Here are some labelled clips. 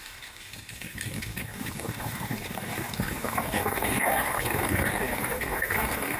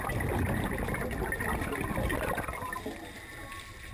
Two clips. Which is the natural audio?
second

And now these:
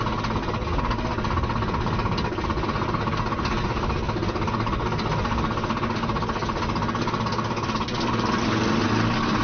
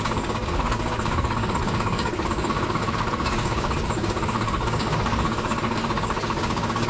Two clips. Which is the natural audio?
first